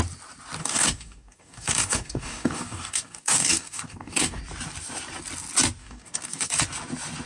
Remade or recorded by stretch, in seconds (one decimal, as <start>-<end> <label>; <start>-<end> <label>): 0.0-0.6 recorded; 0.6-4.4 remade; 4.4-5.8 recorded; 5.8-6.5 remade; 6.5-7.3 recorded

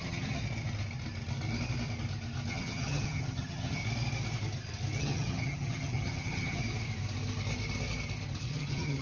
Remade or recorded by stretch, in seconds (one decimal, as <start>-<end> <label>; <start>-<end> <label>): 0.0-0.4 remade; 0.4-2.5 recorded; 2.5-3.8 remade; 3.8-5.0 recorded; 5.0-6.6 remade; 6.6-8.4 recorded; 8.4-9.0 remade

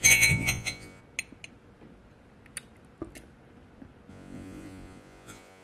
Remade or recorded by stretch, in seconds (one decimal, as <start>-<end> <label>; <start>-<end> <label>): 0.0-1.0 remade; 1.0-4.1 recorded; 4.1-5.6 remade